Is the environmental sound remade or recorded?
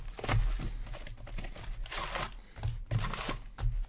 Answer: recorded